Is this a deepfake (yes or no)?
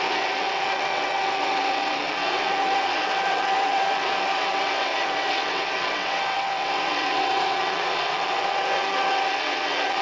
yes